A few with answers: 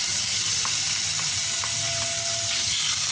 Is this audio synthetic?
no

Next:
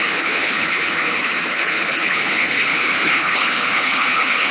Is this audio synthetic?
yes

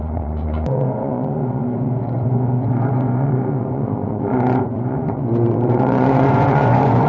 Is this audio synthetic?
yes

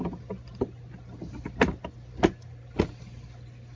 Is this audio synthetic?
no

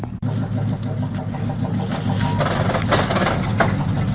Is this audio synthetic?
no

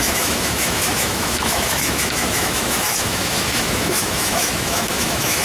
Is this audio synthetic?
yes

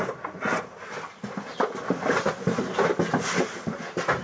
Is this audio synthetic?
no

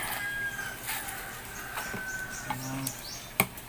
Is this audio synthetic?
no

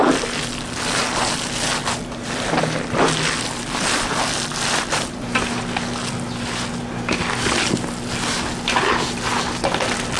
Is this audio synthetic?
no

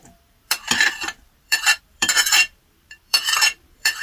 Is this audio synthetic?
yes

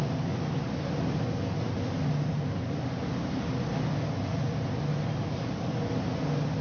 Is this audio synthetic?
no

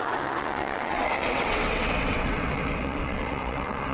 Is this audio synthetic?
yes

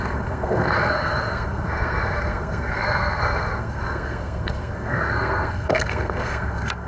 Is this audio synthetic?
yes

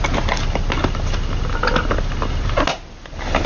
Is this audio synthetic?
no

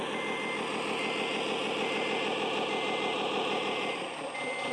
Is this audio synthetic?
no